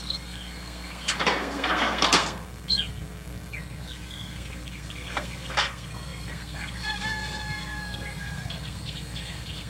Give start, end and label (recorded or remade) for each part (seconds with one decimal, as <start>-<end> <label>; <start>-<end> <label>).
0.0-9.7 remade